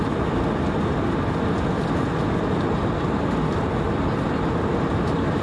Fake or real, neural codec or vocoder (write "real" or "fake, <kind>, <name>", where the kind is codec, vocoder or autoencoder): real